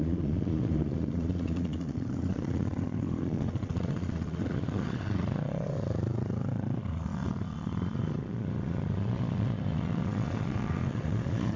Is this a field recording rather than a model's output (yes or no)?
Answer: no